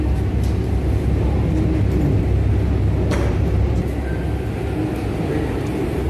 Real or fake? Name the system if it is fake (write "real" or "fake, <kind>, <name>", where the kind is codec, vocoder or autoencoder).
real